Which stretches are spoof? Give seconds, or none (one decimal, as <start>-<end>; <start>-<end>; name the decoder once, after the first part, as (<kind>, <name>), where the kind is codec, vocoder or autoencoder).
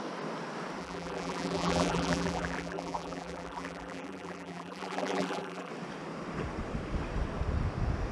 0.8-5.7 (vocoder, BigVGAN v2)